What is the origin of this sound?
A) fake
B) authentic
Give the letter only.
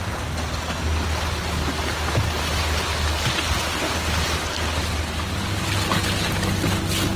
B